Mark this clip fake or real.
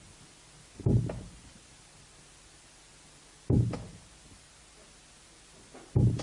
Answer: real